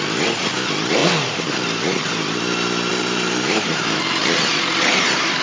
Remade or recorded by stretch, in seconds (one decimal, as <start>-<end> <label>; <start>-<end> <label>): 0.0-1.0 recorded; 1.0-2.4 remade; 2.4-2.9 recorded; 2.9-4.2 remade; 4.2-5.4 recorded